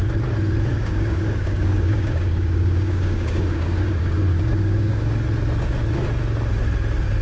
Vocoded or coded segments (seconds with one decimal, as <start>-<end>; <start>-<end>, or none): 0.7-5.0